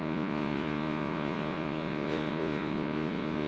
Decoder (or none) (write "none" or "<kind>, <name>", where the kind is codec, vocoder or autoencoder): vocoder, Vocos